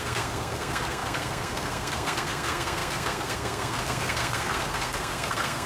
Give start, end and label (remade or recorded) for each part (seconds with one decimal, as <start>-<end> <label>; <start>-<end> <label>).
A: 0.0-5.7 remade